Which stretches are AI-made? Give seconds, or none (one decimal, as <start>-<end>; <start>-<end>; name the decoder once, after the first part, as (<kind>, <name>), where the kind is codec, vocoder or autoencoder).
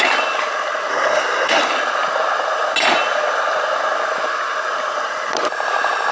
0.9-1.6 (codec, SNAC)